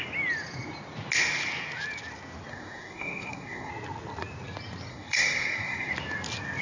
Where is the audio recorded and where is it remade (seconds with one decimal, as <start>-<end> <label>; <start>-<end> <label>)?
0.0-2.5 recorded; 2.5-3.7 remade; 3.7-4.9 recorded; 4.9-5.9 remade; 5.9-6.6 recorded